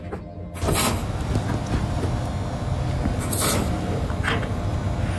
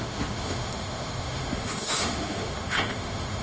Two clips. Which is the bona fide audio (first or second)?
first